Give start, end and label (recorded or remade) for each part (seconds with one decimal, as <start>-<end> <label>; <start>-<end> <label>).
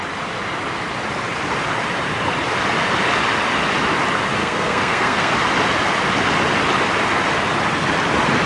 0.0-4.4 recorded; 4.4-5.3 remade; 5.3-8.5 recorded